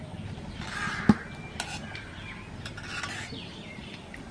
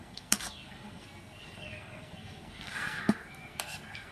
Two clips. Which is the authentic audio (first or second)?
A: first